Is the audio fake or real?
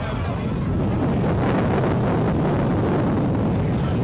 real